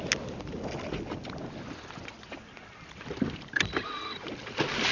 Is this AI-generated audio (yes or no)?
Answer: no